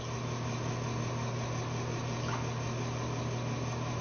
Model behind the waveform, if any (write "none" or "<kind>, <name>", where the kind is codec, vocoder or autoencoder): none